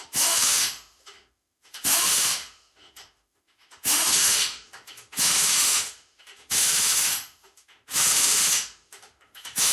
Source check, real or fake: fake